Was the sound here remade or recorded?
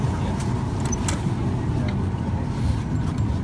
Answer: recorded